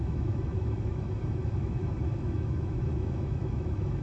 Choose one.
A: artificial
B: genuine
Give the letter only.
A